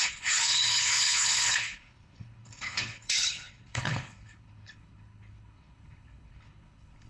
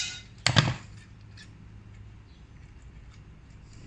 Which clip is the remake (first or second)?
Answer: first